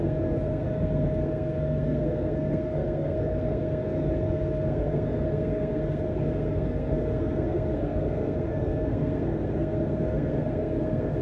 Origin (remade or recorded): remade